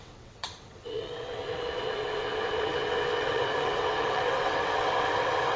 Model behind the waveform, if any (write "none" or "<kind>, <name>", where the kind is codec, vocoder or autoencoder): vocoder, WaveNeXt